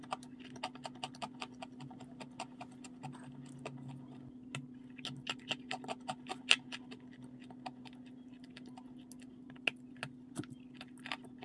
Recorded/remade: recorded